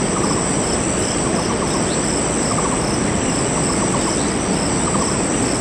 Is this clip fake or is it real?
real